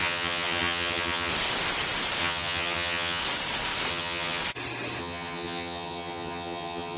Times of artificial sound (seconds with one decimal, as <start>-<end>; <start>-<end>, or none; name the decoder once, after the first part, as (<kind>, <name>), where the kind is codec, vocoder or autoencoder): 0.0-1.3 (vocoder, HiFi-GAN); 2.2-3.2; 3.9-4.4; 5.0-7.0